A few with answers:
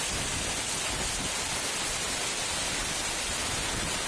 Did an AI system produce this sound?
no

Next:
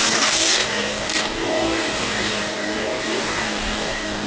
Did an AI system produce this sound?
yes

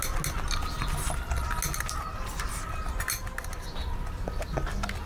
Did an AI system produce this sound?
no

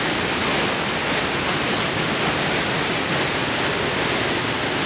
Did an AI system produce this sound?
no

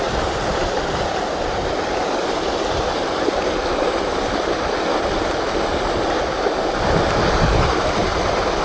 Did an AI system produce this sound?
no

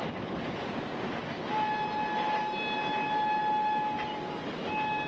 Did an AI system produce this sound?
no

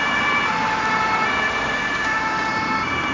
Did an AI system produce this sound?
no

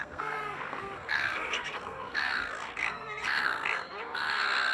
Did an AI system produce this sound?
yes